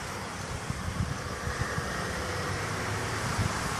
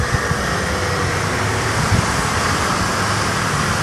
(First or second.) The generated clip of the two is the first